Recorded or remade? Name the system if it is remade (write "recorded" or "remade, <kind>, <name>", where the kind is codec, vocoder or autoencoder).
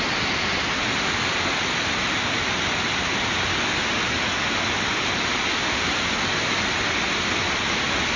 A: recorded